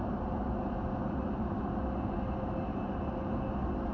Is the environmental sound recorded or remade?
recorded